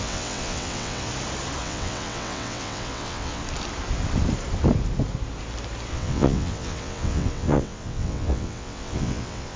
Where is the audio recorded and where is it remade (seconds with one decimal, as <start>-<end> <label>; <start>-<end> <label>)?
0.0-1.1 remade; 1.1-1.6 recorded; 1.6-3.4 remade; 3.4-5.9 recorded; 5.9-9.6 remade